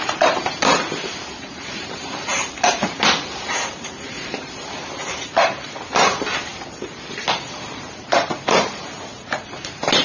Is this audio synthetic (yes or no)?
yes